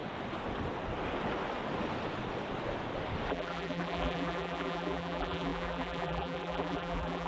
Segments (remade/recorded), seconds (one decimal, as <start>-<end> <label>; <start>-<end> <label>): 0.0-3.3 recorded; 3.3-7.3 remade